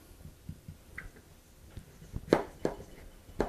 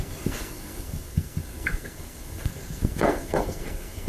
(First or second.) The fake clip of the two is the second